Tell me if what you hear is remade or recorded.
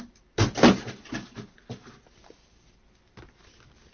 recorded